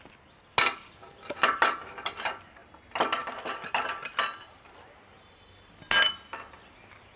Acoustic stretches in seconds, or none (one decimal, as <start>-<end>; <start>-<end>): 0.0-7.2